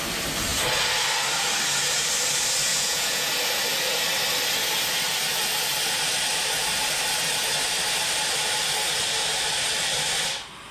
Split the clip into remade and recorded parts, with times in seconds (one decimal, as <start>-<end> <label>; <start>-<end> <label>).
0.0-2.7 recorded; 2.7-3.3 remade; 3.3-10.7 recorded